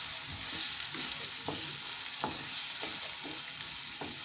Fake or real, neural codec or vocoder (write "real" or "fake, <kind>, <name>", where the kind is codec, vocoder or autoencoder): real